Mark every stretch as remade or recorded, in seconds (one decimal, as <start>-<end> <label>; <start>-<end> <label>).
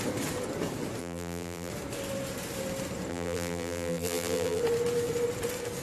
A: 0.0-1.0 recorded; 1.0-1.7 remade; 1.7-3.1 recorded; 3.1-4.6 remade; 4.6-5.8 recorded